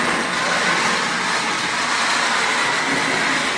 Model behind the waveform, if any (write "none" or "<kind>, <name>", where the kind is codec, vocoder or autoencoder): none